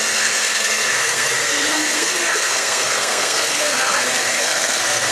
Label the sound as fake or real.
fake